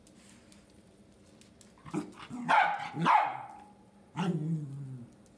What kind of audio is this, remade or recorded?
recorded